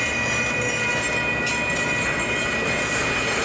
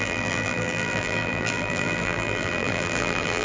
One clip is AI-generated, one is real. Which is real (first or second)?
first